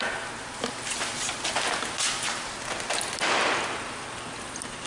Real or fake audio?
real